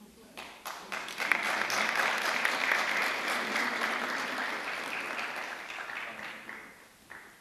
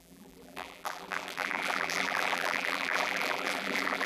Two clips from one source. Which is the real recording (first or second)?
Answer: first